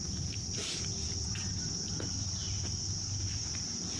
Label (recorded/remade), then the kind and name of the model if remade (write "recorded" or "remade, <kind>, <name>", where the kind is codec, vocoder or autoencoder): remade, vocoder, BigVGAN v2